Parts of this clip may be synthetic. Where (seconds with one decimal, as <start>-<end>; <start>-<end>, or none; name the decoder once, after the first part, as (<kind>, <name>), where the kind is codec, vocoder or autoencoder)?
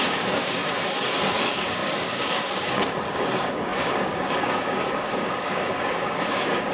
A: 0.0-0.6 (codec, DAC); 1.3-6.7